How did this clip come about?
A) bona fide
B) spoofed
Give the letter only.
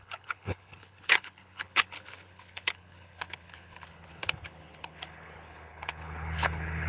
B